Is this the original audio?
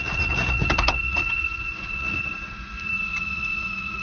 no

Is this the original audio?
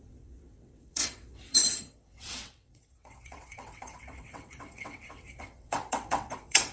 no